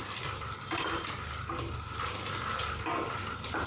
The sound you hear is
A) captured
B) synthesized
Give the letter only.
A